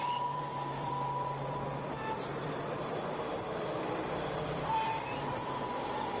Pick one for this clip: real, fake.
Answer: fake